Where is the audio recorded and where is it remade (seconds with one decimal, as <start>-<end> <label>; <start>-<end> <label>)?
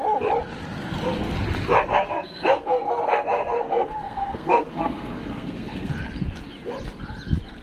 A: 0.0-1.9 recorded; 1.9-5.9 remade; 5.9-7.6 recorded